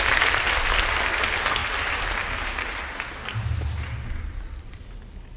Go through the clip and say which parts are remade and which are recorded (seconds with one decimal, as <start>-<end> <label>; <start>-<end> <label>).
0.0-1.6 recorded; 1.6-2.8 remade; 2.8-5.4 recorded